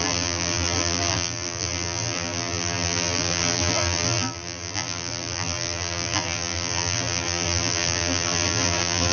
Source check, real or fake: fake